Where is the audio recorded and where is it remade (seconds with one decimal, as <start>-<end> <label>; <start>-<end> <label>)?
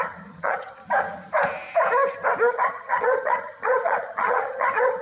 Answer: 0.0-0.8 remade; 0.8-2.5 recorded; 2.5-5.0 remade